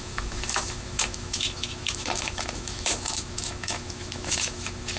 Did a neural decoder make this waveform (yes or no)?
yes